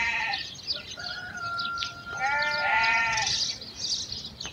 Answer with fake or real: real